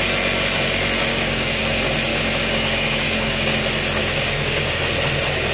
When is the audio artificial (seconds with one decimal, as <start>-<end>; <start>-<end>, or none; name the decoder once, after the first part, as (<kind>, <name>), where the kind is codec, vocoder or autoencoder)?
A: 1.1-1.6 (codec, DAC); 2.1-3.6; 4.0-4.8